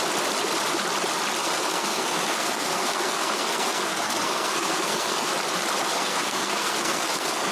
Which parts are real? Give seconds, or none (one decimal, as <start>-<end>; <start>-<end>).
0.0-1.4; 5.3-5.9

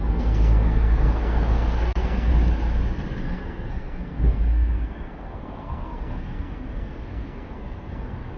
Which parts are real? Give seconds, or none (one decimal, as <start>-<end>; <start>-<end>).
2.3-3.2

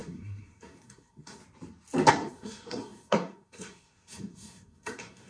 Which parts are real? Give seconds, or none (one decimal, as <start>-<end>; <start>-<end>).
1.4-2.1

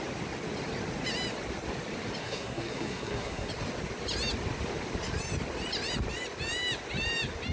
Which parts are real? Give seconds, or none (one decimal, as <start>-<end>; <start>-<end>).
0.0-2.2; 3.5-7.5

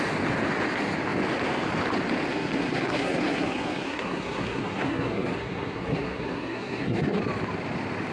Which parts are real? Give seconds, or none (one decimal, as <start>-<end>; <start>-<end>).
0.0-2.3; 7.2-8.1